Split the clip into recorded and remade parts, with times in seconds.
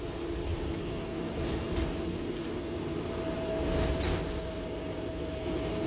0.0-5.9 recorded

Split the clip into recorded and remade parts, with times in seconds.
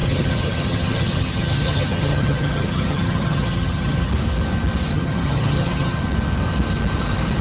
0.0-4.1 remade; 4.1-4.9 recorded; 4.9-6.0 remade; 6.0-7.4 recorded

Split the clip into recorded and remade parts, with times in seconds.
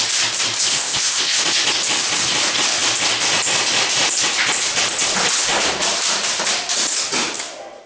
0.0-0.7 recorded; 0.7-1.4 remade; 1.4-7.9 recorded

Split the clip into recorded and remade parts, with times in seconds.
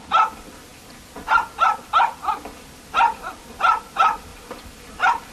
0.0-4.3 recorded; 4.3-5.3 remade